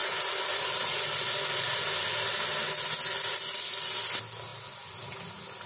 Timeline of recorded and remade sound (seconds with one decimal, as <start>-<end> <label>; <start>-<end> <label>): 0.0-5.7 recorded